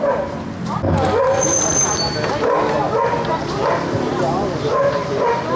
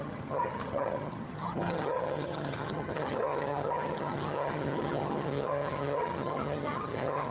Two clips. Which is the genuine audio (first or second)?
first